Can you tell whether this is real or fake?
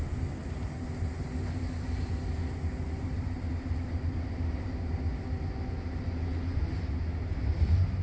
real